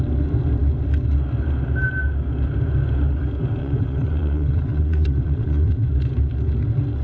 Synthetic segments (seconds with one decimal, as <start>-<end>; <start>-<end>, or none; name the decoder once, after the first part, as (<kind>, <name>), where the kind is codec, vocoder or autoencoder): 3.6-5.9 (vocoder, WaveNeXt)